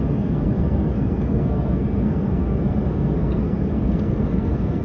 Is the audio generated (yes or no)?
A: yes